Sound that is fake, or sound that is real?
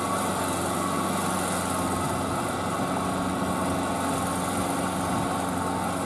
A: real